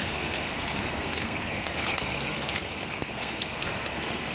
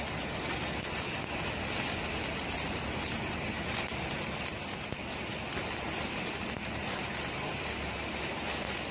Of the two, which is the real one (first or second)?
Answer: second